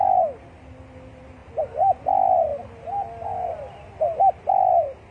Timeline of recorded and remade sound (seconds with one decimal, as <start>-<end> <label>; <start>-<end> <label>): 0.0-5.1 recorded